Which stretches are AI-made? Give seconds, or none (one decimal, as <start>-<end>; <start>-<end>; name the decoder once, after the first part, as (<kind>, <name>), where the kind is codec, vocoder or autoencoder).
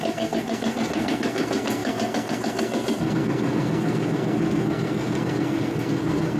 0.0-6.4 (codec, SNAC)